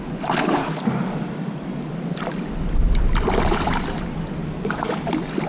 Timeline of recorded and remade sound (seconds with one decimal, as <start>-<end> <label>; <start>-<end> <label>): 0.0-0.6 recorded; 0.6-1.9 remade; 1.9-4.4 recorded; 4.4-5.1 remade; 5.1-5.5 recorded